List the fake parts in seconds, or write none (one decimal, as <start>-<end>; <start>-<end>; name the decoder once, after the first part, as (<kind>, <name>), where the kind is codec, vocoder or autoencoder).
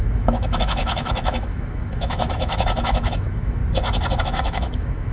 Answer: 0.0-3.6 (autoencoder, DAC-VAE); 4.2-5.1